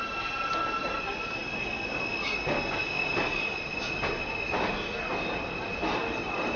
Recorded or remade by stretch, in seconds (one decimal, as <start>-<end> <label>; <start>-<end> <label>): 0.0-6.6 recorded